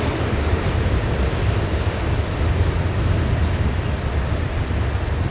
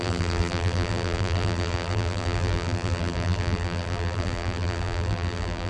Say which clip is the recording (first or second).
first